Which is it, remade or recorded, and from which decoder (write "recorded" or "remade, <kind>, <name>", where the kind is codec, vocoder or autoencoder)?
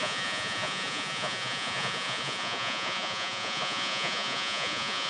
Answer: remade, vocoder, Vocos